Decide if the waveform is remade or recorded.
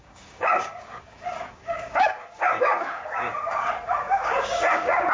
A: remade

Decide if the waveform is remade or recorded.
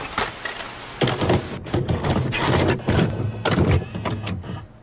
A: recorded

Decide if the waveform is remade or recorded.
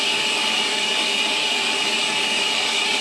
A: remade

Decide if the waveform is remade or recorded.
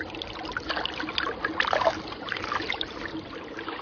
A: recorded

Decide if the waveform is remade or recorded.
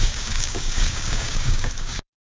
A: remade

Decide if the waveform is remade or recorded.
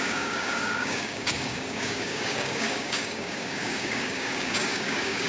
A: remade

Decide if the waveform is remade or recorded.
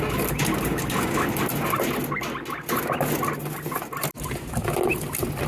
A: recorded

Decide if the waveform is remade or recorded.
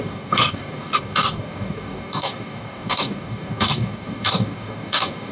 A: remade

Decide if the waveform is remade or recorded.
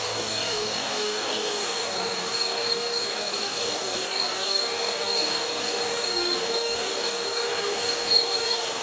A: remade